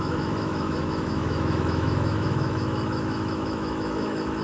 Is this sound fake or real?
fake